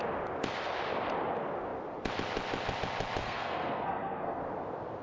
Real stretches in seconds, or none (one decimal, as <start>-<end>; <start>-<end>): 0.0-3.2; 4.4-5.0